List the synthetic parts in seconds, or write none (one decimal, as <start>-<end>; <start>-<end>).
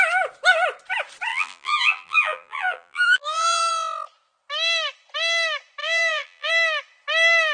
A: 1.3-3.7; 5.8-6.5